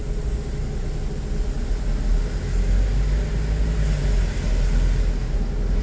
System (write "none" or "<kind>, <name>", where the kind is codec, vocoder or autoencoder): none